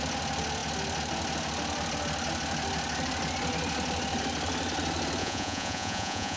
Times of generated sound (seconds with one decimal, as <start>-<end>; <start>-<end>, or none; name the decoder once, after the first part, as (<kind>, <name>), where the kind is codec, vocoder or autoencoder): 5.2-6.4 (vocoder, Vocos)